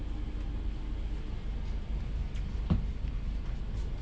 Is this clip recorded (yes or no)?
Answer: yes